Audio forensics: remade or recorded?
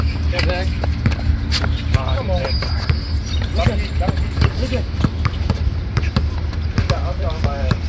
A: recorded